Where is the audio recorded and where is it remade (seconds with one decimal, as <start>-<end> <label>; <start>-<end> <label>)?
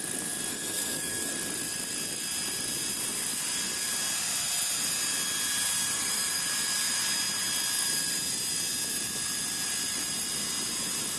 0.0-0.5 recorded; 0.5-1.3 remade; 1.3-5.7 recorded; 5.7-6.4 remade; 6.4-11.2 recorded